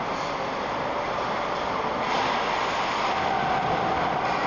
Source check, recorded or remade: recorded